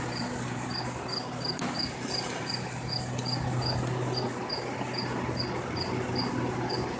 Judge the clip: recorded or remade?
recorded